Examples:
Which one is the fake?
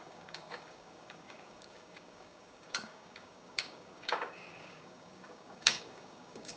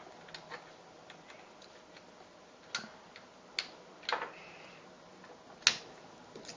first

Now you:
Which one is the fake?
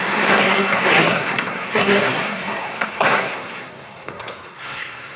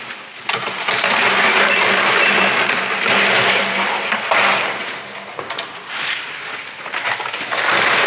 first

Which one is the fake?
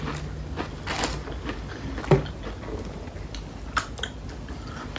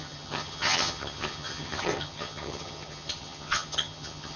second